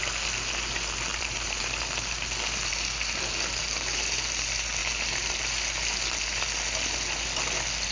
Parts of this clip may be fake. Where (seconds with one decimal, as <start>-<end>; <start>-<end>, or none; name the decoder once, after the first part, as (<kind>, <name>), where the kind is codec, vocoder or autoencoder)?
1.1-1.6 (vocoder, BigVGAN v2)